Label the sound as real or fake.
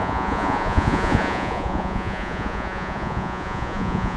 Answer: fake